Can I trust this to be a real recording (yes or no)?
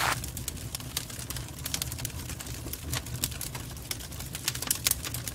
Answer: yes